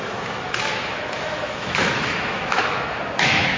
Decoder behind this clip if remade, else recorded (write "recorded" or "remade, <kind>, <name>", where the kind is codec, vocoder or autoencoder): remade, autoencoder, DAC-VAE